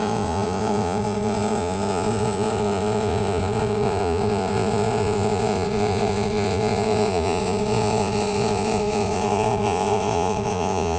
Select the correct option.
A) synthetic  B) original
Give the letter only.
A